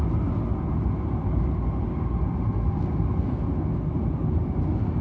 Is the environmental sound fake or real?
real